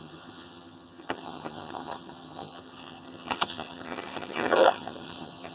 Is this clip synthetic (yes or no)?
yes